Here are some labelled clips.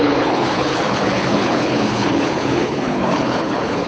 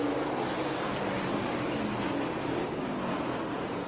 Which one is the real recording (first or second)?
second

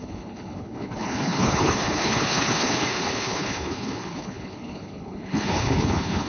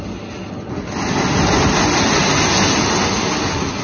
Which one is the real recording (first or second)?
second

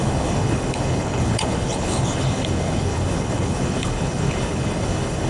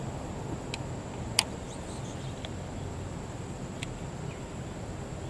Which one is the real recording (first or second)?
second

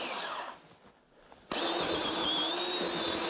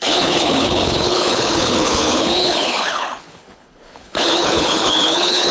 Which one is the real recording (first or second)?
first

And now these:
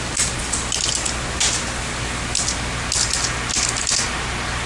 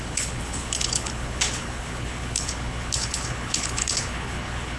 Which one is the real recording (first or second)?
first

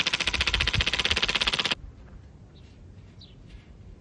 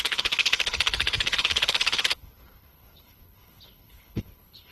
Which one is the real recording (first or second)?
first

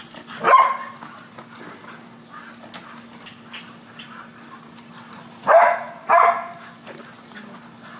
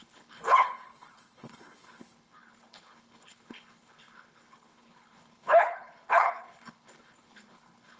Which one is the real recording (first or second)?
first